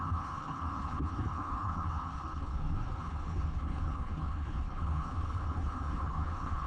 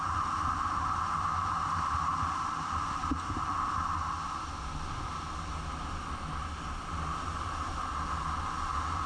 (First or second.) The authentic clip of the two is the second